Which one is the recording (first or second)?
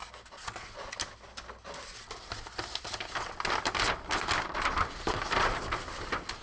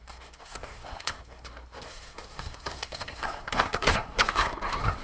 first